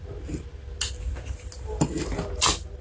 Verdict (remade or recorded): recorded